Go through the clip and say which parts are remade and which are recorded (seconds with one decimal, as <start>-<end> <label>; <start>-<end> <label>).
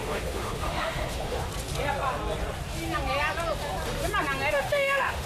0.0-1.5 remade; 1.5-4.5 recorded; 4.5-5.3 remade